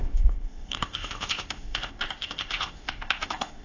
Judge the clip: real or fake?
fake